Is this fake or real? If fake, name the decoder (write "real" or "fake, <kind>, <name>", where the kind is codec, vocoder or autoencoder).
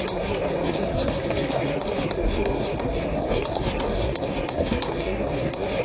fake, codec, SNAC